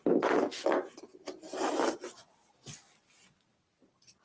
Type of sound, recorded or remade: recorded